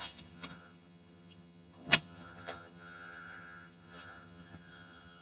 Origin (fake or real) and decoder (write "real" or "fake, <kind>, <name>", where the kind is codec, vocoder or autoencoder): fake, vocoder, HiFi-GAN